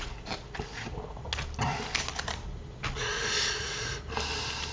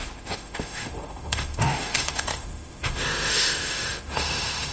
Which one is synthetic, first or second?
second